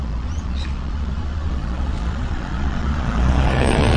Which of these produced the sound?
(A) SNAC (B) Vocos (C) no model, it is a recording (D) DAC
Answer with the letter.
B